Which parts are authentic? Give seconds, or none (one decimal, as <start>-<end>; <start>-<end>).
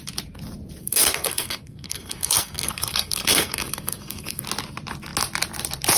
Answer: 0.0-0.8; 4.4-6.0